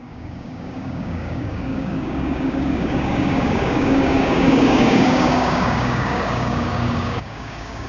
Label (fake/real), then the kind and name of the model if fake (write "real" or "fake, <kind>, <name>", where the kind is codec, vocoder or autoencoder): fake, codec, DAC